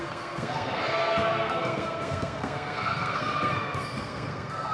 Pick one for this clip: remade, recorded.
remade